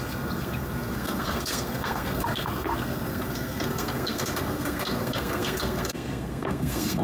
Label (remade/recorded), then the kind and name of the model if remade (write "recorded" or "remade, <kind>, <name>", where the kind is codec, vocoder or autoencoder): remade, codec, SNAC